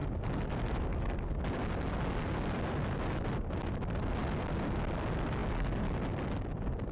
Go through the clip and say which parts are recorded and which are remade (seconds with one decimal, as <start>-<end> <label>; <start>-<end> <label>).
0.0-6.9 recorded